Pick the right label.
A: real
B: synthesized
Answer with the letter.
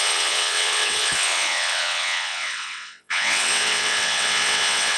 B